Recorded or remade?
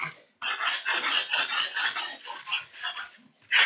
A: recorded